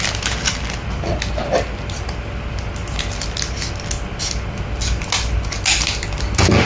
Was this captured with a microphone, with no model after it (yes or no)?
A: yes